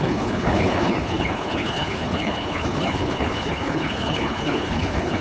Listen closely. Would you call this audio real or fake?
fake